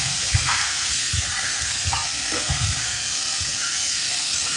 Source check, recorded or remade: remade